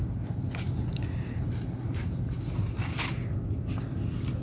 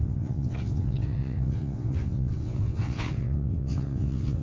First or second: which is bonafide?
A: first